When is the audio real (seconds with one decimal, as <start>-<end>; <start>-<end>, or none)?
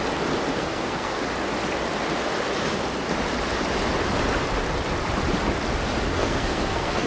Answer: 0.0-0.5; 1.2-6.1